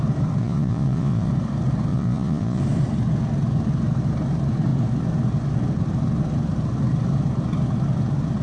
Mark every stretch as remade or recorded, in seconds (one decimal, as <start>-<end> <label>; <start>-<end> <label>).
0.0-0.4 recorded; 0.4-1.3 remade; 1.3-1.9 recorded; 1.9-2.6 remade; 2.6-8.4 recorded